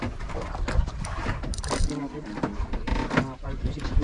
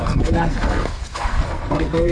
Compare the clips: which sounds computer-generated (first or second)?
second